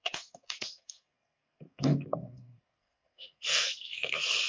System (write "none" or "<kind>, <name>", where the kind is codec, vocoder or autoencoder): codec, SNAC